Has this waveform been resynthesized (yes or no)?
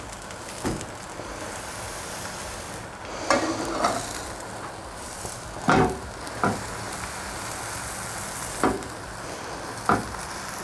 no